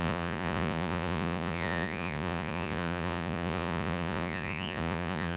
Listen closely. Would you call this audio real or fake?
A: fake